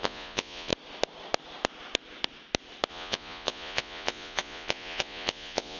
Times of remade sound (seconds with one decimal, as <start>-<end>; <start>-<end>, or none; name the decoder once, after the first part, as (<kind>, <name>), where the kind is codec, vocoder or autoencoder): 0.0-0.7 (vocoder, Vocos); 2.9-5.8